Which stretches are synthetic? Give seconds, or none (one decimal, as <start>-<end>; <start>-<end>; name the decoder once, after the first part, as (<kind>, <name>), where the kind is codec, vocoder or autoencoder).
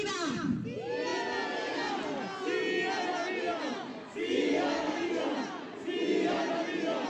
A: 3.9-5.2 (codec, DAC)